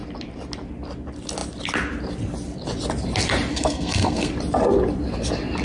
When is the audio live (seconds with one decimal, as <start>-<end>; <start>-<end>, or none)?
0.0-3.5; 4.3-5.6